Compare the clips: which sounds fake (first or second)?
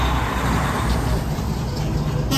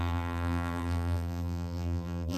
second